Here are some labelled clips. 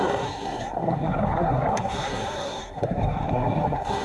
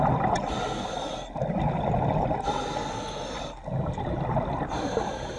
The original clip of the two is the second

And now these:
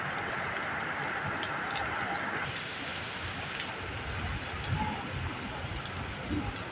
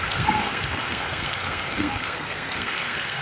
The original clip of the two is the first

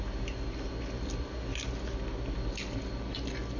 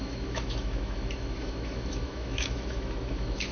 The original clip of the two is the first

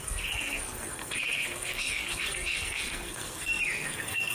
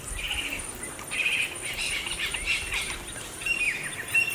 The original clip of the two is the second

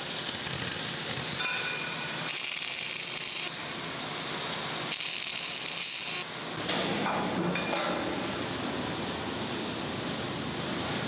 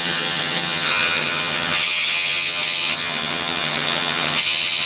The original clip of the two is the first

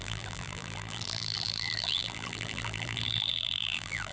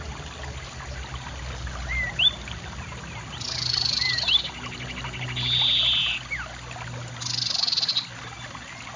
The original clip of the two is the second